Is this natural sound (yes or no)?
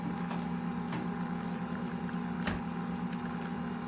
yes